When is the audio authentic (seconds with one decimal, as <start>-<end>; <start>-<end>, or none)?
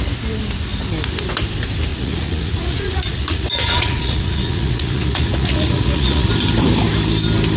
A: 0.0-1.9; 6.3-7.6